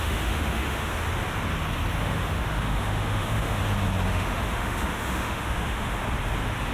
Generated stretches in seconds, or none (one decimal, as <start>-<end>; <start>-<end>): 0.0-0.9; 2.0-3.6; 4.1-6.0